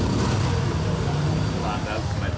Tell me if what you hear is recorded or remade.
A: recorded